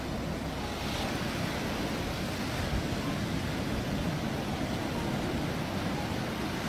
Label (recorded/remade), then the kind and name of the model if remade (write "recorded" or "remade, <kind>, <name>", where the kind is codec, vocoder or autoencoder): recorded